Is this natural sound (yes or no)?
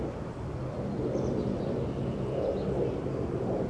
yes